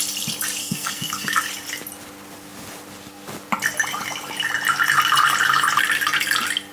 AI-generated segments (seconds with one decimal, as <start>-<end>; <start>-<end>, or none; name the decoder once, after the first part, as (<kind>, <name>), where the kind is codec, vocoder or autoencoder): 0.6-1.4 (codec, SNAC)